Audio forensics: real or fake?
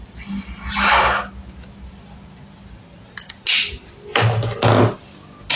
real